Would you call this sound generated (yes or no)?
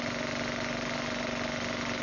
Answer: no